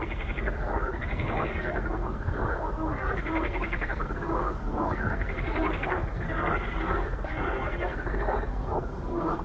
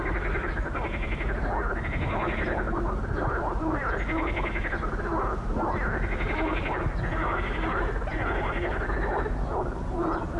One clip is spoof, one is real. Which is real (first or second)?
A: second